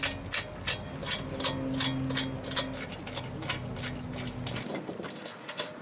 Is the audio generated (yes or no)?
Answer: no